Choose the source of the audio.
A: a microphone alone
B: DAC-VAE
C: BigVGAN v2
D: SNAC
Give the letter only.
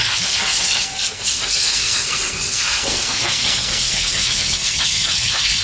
D